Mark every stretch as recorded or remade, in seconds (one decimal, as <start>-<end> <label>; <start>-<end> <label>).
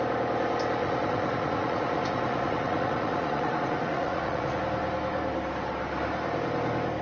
0.0-0.8 recorded; 0.8-4.6 remade; 4.6-7.0 recorded